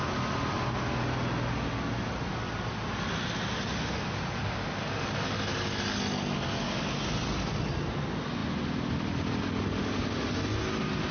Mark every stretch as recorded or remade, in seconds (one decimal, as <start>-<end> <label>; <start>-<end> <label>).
0.0-8.4 recorded; 8.4-9.4 remade; 9.4-11.1 recorded